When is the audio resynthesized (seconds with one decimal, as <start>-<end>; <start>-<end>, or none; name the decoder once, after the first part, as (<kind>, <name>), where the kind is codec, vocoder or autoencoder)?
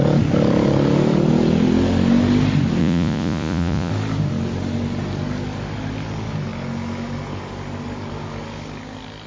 2.8-3.9 (vocoder, Vocos)